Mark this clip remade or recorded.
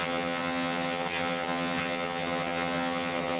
remade